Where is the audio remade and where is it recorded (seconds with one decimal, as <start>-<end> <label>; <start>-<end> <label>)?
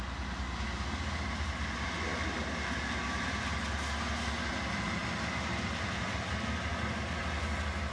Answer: 0.0-7.9 recorded